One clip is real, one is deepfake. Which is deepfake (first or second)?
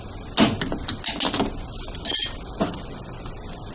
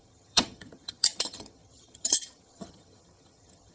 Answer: second